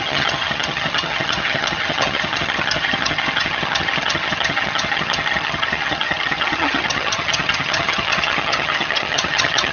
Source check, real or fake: fake